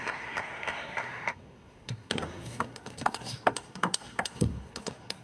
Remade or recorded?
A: remade